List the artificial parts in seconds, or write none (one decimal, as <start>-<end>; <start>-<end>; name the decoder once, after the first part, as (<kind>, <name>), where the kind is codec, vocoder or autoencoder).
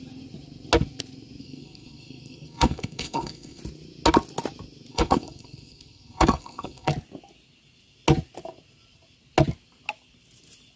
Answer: 1.4-3.6 (codec, SNAC); 4.9-6.9